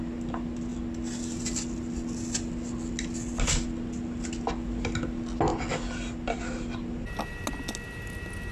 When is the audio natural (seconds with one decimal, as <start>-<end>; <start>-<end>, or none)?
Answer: 0.0-8.5